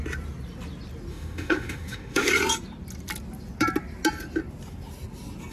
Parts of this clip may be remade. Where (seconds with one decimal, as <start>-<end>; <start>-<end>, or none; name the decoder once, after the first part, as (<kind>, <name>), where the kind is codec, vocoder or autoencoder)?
1.1-2.3 (autoencoder, DAC-VAE)